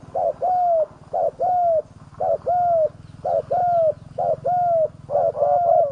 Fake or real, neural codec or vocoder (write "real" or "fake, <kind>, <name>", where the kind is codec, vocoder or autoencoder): real